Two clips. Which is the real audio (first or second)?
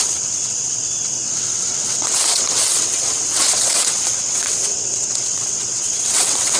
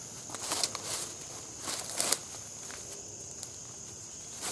second